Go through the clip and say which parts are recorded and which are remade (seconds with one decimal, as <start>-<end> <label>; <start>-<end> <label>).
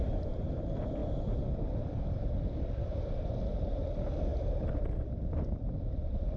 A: 0.0-1.0 remade; 1.0-1.6 recorded; 1.6-6.4 remade